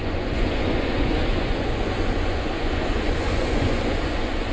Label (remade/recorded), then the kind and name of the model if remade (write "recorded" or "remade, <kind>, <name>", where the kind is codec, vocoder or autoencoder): remade, vocoder, Vocos